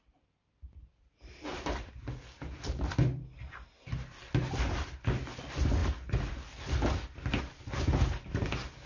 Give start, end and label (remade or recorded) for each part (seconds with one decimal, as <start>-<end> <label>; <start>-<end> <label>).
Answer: 0.0-8.9 recorded